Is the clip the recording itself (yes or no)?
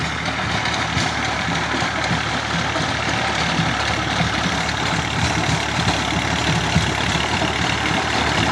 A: yes